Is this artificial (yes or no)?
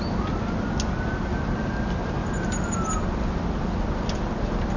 no